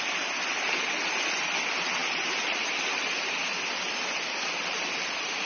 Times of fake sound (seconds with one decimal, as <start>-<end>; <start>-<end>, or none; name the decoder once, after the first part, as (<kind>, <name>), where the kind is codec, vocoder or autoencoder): none